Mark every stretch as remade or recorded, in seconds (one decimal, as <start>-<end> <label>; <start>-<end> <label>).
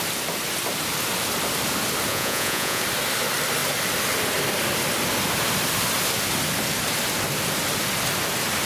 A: 0.0-2.1 recorded; 2.1-2.8 remade; 2.8-8.7 recorded